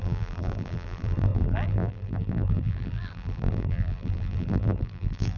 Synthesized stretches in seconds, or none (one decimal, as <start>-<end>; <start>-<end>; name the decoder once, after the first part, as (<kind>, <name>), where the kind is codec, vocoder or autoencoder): 0.0-5.4 (vocoder, BigVGAN v2)